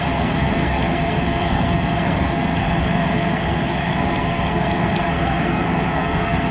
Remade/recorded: remade